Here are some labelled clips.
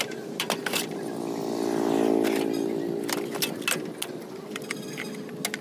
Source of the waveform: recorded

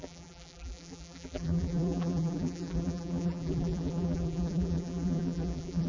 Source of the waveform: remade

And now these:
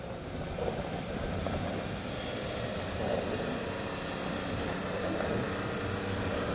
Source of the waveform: remade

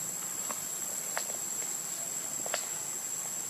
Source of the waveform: recorded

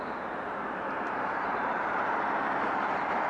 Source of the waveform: remade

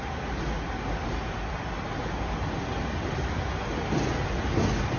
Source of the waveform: recorded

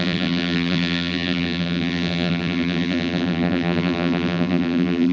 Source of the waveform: remade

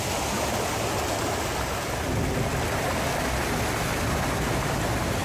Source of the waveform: recorded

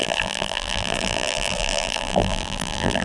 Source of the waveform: remade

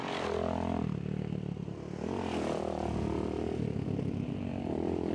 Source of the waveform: recorded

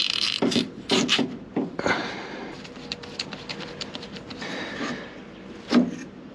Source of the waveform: remade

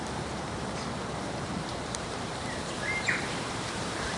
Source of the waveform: remade